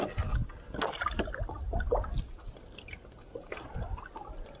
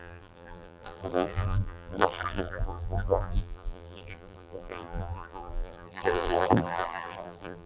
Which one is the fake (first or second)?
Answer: second